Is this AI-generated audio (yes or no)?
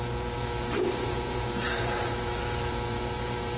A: yes